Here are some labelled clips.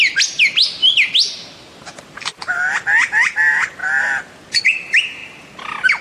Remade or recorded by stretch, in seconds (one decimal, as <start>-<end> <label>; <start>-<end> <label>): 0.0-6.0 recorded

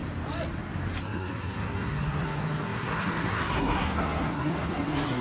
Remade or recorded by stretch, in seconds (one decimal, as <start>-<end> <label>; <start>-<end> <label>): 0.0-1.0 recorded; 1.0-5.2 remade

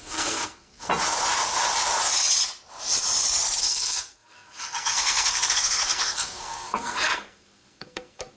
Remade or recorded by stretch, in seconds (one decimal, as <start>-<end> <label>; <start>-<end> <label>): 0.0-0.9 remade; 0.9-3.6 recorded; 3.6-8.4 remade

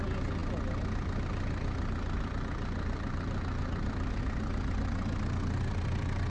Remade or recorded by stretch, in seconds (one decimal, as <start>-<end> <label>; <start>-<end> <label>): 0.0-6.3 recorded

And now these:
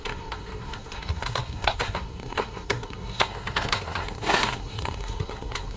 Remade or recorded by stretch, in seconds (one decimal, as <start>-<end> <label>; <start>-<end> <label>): 0.0-5.8 remade

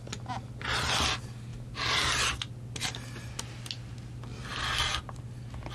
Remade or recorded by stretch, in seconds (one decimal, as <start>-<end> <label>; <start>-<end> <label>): 0.0-5.7 recorded

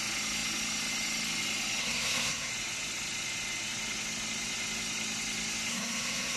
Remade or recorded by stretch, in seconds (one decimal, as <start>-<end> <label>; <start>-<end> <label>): 0.0-1.8 recorded; 1.8-2.5 remade; 2.5-5.7 recorded; 5.7-6.4 remade